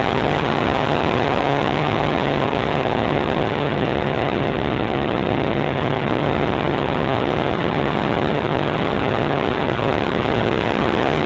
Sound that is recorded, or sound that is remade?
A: remade